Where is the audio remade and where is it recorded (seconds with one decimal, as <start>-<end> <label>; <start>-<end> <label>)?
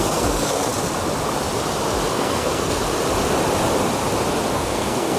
0.0-0.7 remade; 0.7-2.1 recorded; 2.1-2.8 remade; 2.8-4.5 recorded; 4.5-5.2 remade